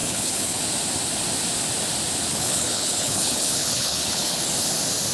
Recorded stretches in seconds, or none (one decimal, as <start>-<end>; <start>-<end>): 0.6-2.3; 4.4-5.1